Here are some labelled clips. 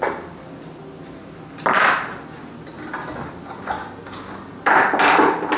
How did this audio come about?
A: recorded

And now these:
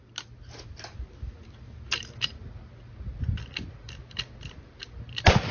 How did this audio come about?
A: recorded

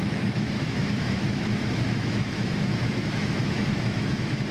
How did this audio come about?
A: remade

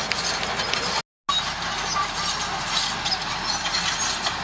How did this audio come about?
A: recorded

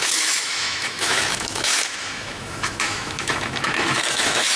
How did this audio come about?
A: remade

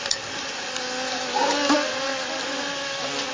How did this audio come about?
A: recorded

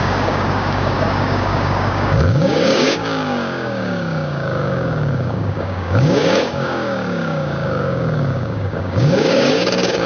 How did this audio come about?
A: remade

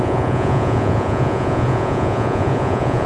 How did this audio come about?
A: remade